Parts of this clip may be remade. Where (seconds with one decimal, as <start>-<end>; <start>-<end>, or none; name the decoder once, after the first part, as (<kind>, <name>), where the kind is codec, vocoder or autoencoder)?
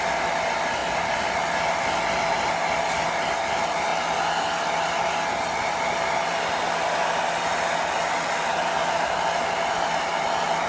none